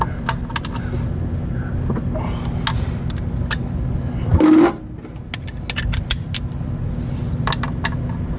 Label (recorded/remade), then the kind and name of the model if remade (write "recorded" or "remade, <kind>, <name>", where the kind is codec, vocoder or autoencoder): recorded